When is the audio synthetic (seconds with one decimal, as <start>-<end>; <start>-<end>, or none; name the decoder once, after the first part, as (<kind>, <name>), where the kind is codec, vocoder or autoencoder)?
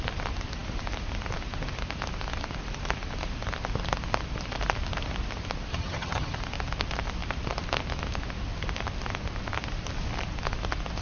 5.7-6.4 (vocoder, HiFi-GAN)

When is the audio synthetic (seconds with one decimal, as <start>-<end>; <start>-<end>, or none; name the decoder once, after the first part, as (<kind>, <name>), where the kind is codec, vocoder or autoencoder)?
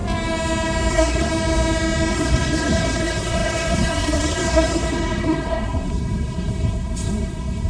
0.9-1.3 (codec, SNAC); 2.1-7.7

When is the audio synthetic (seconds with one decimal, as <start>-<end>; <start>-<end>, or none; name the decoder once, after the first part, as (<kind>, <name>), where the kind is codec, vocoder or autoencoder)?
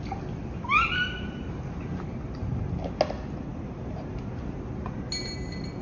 none